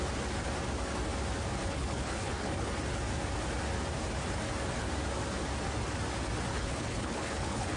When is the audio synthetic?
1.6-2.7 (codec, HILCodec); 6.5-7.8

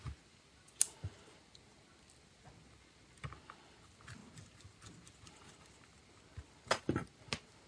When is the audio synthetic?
none

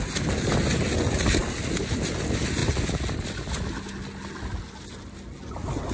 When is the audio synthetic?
none

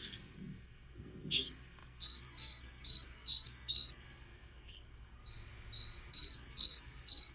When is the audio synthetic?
0.0-5.2 (codec, SNAC); 6.1-7.3

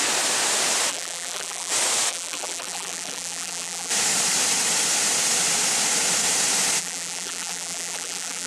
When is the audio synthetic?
0.9-1.7 (vocoder, BigVGAN v2); 2.1-3.9; 6.8-8.5

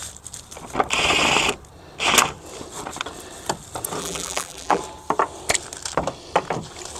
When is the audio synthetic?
4.0-4.8 (vocoder, BigVGAN v2)

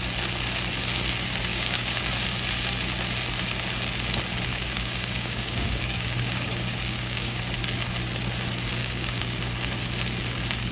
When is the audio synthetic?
1.5-2.1 (codec, DAC); 4.5-7.4; 8.8-9.4